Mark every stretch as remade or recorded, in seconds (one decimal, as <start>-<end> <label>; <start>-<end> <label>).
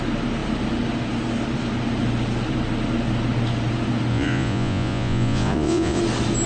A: 0.0-4.1 recorded; 4.1-6.0 remade; 6.0-6.5 recorded